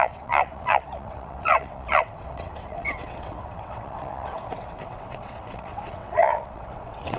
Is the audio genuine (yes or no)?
no